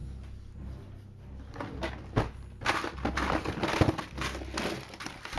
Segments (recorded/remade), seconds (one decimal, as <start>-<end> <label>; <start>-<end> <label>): 0.0-5.4 recorded